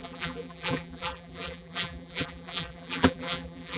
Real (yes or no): no